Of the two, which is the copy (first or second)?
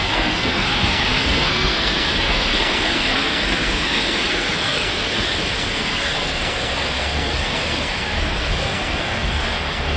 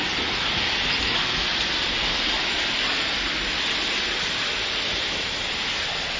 first